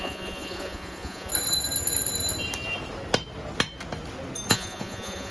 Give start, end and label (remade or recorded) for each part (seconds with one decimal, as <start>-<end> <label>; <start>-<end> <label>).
0.0-1.3 remade; 1.3-4.5 recorded; 4.5-5.3 remade